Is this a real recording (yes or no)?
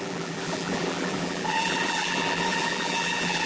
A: no